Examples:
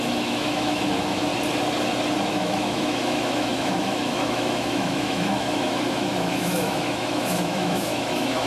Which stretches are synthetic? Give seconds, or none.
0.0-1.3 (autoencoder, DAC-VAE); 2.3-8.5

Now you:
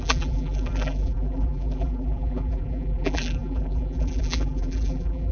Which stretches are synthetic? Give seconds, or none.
0.0-5.3 (vocoder, BigVGAN v2)

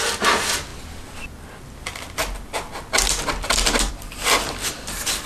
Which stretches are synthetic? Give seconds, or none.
none

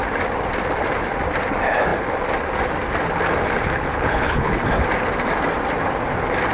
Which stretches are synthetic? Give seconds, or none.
3.9-4.5 (codec, HILCodec)